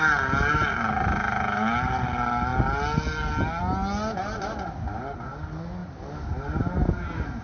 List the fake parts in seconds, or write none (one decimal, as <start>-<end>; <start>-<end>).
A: none